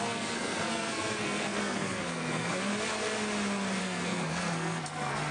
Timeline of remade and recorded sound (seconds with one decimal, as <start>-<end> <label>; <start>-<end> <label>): 0.0-2.7 remade; 2.7-3.8 recorded; 3.8-5.3 remade